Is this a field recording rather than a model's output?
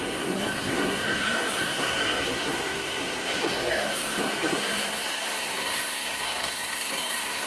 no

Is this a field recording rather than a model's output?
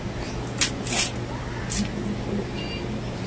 yes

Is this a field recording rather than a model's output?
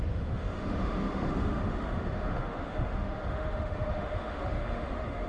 no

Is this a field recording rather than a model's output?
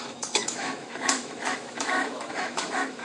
no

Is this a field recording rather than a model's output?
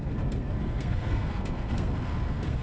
no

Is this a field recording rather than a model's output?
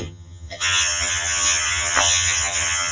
no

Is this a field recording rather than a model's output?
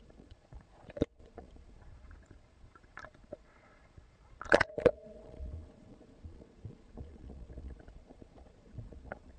no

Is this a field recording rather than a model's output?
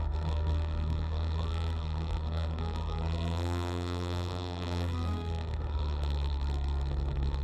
no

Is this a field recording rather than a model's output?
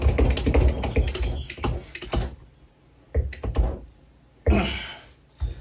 yes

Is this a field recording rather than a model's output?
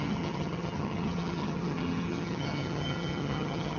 no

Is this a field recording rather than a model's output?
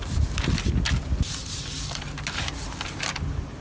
yes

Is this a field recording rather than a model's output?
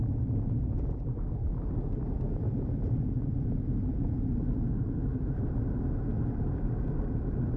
no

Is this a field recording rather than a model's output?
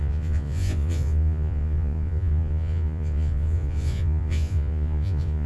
no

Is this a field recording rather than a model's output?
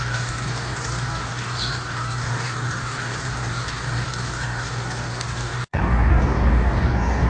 no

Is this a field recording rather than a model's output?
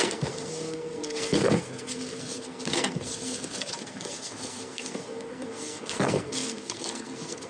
no